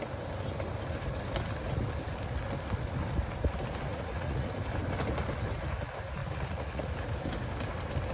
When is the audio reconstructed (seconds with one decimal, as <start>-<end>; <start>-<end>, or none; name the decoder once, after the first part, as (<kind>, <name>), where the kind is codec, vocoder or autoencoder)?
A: 3.9-4.5 (vocoder, Vocos); 6.2-6.9

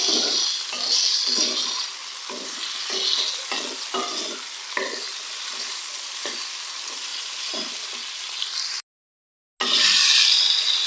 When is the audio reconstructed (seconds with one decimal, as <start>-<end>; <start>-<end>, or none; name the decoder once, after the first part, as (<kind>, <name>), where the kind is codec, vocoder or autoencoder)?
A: 7.1-7.7 (vocoder, Vocos)

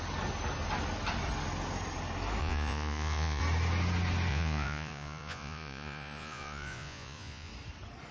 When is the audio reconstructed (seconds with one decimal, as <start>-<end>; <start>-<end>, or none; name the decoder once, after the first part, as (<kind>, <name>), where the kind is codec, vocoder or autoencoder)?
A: 2.4-3.4 (vocoder, Vocos); 4.3-7.5

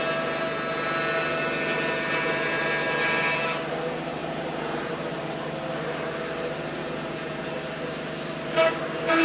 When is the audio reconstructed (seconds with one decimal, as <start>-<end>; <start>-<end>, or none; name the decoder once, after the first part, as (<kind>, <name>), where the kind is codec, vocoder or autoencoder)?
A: 4.2-4.9 (vocoder, Vocos); 6.8-7.5

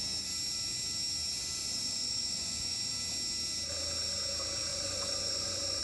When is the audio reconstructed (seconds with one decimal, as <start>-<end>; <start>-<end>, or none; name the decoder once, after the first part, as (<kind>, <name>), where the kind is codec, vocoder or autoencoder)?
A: 1.6-2.9 (vocoder, Vocos); 4.7-5.8

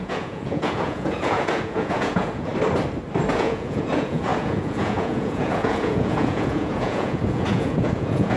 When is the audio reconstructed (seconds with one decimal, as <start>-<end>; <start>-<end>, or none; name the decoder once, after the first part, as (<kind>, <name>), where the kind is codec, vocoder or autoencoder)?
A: 0.0-2.5 (vocoder, Vocos); 3.3-8.4

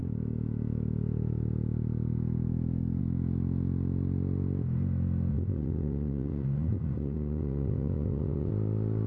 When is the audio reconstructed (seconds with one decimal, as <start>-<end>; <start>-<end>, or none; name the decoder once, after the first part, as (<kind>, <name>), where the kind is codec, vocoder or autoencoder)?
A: 5.3-8.5 (vocoder, Vocos)

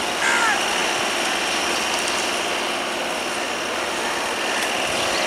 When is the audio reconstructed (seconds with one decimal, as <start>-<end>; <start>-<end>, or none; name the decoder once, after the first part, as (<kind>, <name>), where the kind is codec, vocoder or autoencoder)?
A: none